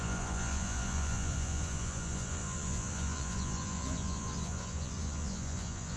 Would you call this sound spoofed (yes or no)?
yes